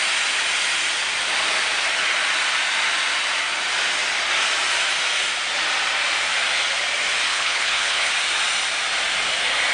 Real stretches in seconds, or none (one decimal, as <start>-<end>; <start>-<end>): 0.0-7.3; 8.1-9.7